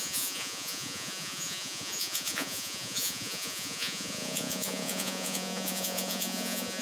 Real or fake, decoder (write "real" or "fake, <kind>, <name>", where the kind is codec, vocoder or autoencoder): fake, vocoder, Vocos